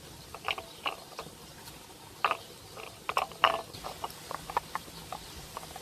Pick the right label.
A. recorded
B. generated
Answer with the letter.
A